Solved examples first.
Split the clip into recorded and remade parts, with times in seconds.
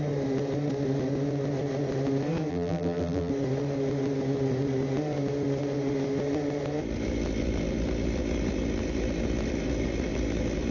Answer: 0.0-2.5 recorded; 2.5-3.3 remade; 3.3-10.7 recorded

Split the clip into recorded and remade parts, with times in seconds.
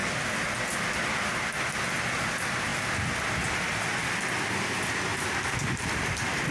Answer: 0.0-5.1 recorded; 5.1-6.5 remade